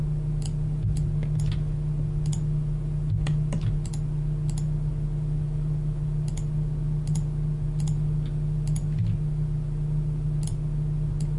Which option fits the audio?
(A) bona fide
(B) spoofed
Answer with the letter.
A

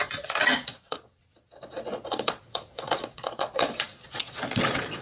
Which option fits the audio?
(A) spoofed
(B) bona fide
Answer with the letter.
A